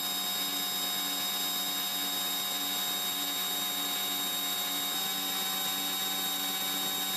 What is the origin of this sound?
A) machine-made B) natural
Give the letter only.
B